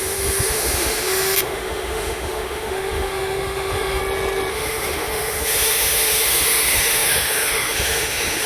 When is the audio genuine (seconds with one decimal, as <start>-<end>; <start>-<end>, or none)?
4.0-4.5